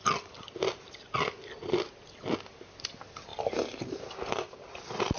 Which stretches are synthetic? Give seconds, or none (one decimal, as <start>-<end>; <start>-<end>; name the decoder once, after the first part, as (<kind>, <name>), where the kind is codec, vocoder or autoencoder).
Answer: none